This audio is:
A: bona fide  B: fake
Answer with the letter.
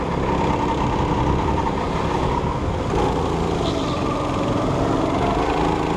A